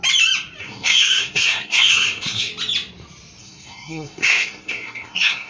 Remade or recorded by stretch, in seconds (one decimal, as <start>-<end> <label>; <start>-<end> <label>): 0.0-0.6 recorded; 0.6-2.5 remade; 2.5-3.4 recorded; 3.4-5.5 remade